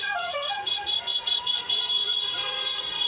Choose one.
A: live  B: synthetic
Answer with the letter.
B